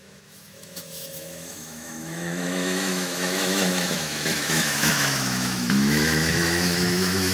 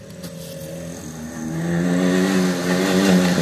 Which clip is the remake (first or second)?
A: first